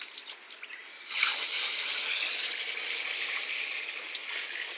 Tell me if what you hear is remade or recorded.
recorded